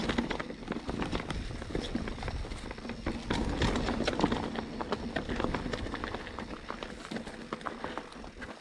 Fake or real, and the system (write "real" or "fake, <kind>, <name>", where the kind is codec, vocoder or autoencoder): real